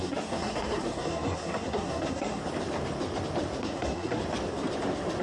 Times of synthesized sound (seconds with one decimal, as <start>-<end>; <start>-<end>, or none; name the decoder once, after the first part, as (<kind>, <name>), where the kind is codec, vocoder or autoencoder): 0.0-2.4 (codec, SNAC); 3.6-4.2